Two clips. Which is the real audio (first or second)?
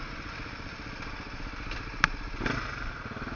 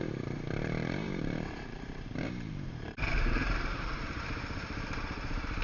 first